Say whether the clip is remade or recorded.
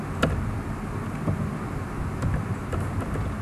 recorded